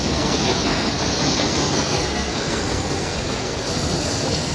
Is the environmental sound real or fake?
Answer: fake